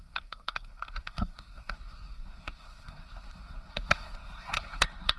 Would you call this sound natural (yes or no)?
no